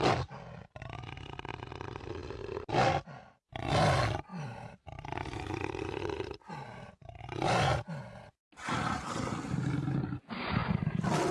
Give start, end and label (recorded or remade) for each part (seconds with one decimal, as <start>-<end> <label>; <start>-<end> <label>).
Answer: 0.0-4.3 recorded; 4.3-8.0 remade; 8.0-11.3 recorded